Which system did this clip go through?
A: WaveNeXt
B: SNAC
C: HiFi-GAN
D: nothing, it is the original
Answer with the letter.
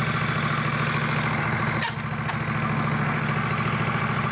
D